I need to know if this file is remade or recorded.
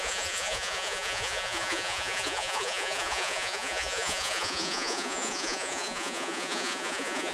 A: remade